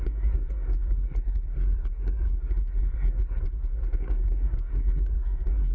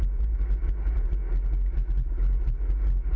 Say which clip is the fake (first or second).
first